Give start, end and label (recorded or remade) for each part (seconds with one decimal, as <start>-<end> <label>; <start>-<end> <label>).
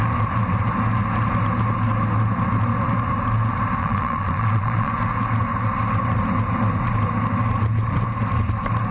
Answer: 0.0-3.8 recorded; 3.8-4.9 remade; 4.9-8.9 recorded